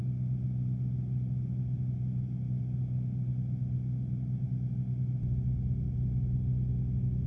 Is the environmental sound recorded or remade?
recorded